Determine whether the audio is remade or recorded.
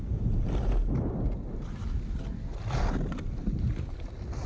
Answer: recorded